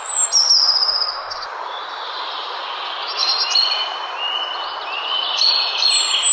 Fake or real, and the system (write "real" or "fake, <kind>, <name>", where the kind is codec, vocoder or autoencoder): real